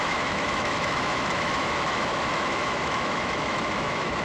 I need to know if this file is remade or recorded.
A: remade